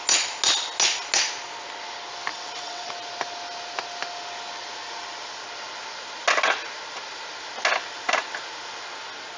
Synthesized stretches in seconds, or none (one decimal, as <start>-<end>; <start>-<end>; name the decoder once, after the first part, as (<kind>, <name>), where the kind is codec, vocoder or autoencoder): 2.3-2.9 (vocoder, WaveNeXt)